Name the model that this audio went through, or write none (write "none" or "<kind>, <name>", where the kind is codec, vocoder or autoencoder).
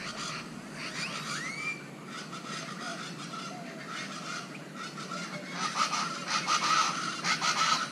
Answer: none